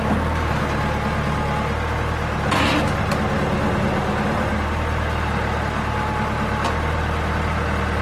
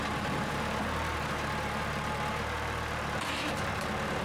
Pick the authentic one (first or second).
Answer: first